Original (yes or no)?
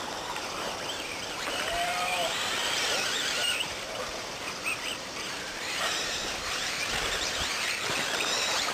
no